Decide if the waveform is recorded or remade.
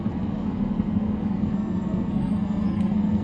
remade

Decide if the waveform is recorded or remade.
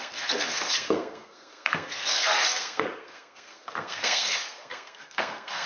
remade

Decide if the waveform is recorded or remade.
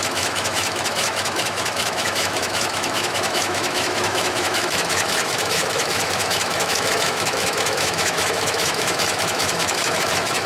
remade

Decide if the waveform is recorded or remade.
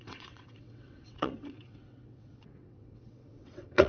remade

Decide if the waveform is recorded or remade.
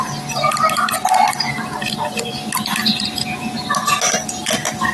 recorded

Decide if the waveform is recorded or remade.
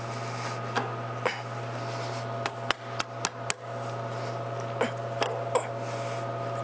recorded